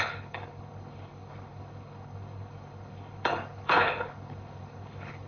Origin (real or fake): fake